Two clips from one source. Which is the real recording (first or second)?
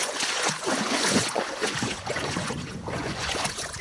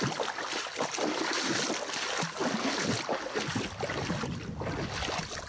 second